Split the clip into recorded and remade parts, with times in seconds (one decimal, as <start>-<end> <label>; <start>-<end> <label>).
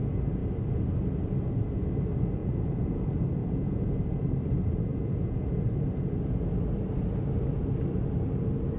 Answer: 0.0-2.4 recorded; 2.4-3.0 remade; 3.0-3.4 recorded; 3.4-3.9 remade; 3.9-4.9 recorded; 4.9-5.4 remade; 5.4-8.8 recorded